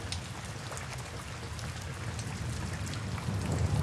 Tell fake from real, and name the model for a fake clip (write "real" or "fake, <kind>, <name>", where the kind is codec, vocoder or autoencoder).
real